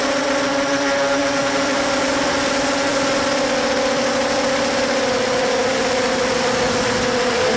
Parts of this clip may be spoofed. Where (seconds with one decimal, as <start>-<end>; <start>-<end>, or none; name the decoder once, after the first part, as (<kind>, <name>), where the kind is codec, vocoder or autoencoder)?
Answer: none